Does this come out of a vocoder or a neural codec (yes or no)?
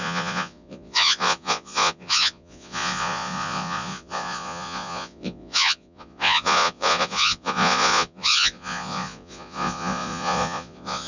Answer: yes